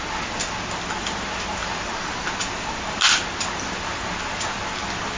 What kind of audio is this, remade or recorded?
recorded